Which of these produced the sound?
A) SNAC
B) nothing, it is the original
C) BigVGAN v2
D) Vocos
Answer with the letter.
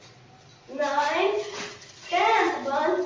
B